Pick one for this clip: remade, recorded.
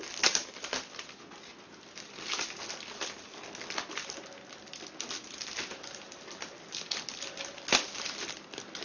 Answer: recorded